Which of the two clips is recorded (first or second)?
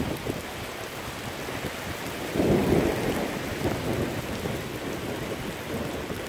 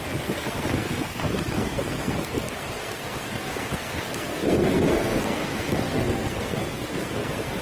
first